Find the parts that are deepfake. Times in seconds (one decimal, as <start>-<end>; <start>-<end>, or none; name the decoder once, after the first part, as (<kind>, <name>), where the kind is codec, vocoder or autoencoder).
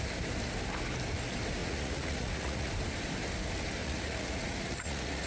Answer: 1.6-2.7 (vocoder, Vocos); 3.8-5.3